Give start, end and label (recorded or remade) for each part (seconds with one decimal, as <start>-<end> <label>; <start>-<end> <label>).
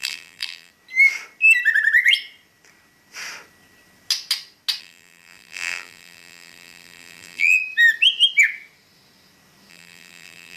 0.0-0.7 remade; 0.7-4.8 recorded; 4.8-7.6 remade; 7.6-9.7 recorded; 9.7-10.6 remade